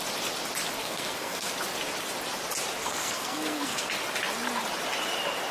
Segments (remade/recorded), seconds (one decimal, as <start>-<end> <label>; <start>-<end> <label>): 0.0-0.8 recorded; 0.8-1.5 remade; 1.5-2.8 recorded; 2.8-3.9 remade; 3.9-5.5 recorded